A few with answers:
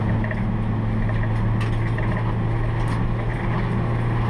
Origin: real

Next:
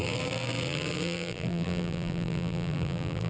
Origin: fake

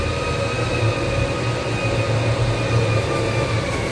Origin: real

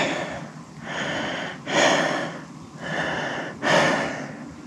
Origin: real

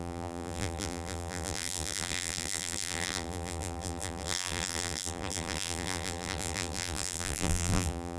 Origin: fake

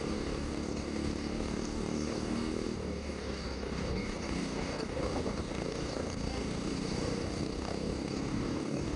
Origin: fake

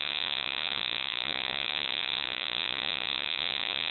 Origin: fake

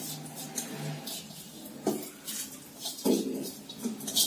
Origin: real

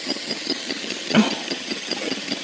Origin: fake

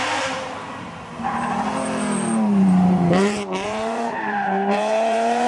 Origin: fake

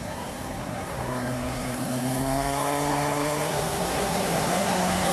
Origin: fake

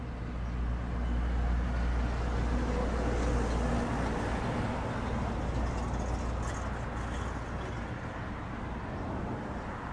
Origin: real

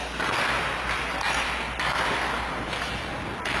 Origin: real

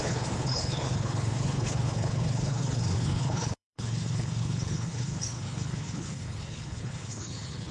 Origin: fake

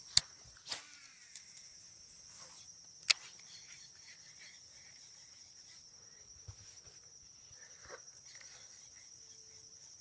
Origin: real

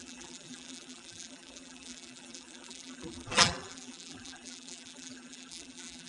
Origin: fake